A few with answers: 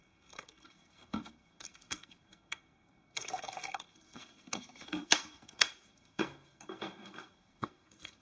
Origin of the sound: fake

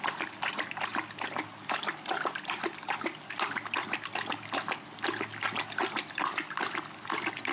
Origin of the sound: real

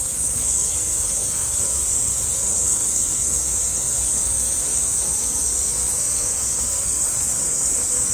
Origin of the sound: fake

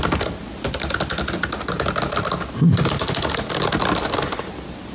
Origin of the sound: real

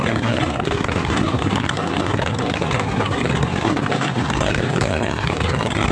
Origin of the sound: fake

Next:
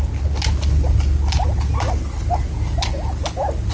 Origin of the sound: real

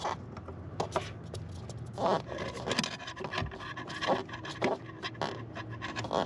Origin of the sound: real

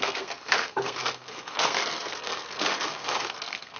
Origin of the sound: fake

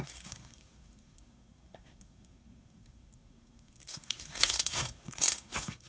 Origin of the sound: fake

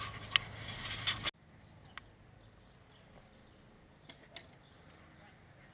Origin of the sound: real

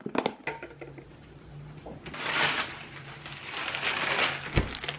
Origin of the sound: real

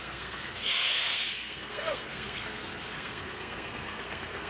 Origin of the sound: fake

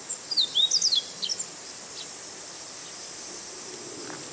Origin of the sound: real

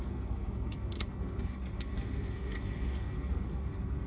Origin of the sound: fake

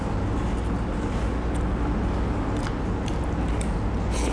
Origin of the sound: real